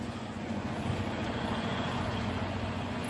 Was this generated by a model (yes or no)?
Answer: yes